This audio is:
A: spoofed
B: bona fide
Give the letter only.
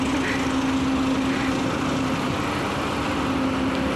B